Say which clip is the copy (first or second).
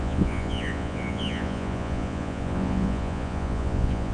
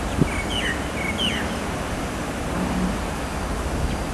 first